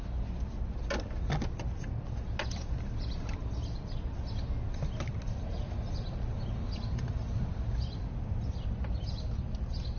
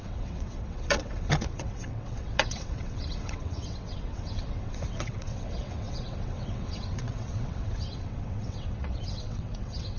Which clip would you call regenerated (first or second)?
second